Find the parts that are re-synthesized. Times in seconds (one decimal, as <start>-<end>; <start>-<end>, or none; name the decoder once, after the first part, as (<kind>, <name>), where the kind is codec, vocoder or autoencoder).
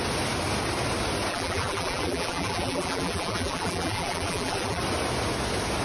1.3-4.8 (vocoder, BigVGAN v2)